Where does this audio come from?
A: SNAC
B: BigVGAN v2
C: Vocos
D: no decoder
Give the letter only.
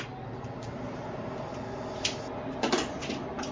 D